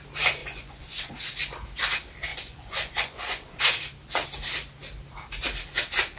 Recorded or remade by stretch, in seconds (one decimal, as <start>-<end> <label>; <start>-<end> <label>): 0.0-0.4 recorded; 0.4-1.1 remade; 1.1-2.3 recorded; 2.3-3.6 remade; 3.6-6.2 recorded